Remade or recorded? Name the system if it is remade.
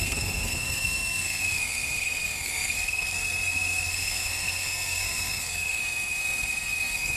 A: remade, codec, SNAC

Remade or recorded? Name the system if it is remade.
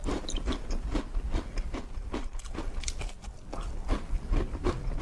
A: recorded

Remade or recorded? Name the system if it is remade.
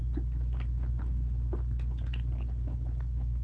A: recorded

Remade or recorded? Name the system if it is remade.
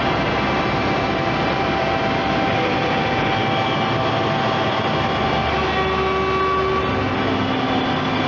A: recorded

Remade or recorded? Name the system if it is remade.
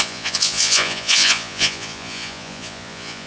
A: remade, vocoder, Vocos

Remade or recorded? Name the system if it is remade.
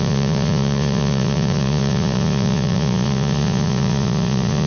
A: remade, vocoder, Vocos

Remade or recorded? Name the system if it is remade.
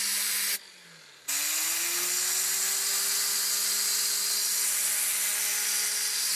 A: recorded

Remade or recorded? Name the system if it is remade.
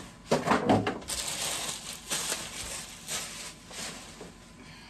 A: recorded